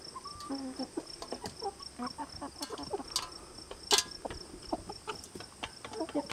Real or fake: real